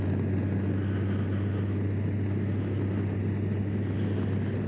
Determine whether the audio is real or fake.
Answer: real